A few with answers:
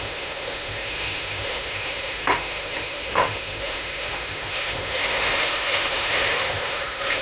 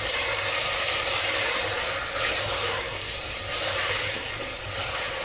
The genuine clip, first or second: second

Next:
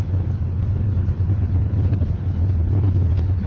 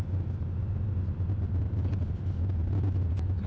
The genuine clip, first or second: second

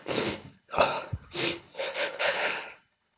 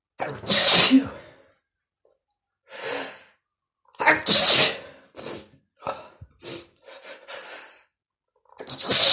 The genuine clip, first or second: second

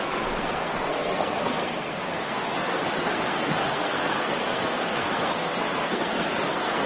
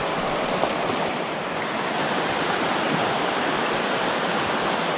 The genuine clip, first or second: second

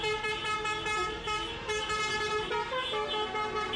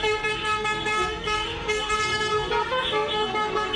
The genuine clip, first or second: first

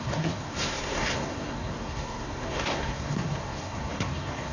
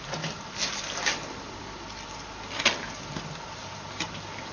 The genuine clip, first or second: second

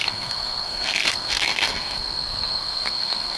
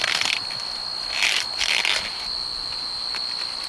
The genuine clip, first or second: second